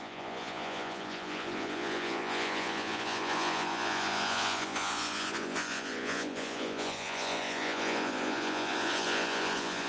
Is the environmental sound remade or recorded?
remade